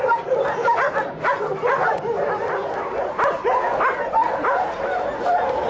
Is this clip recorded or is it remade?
recorded